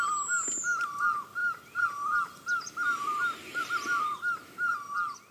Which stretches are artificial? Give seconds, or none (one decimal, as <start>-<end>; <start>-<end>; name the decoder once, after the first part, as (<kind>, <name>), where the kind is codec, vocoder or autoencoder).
none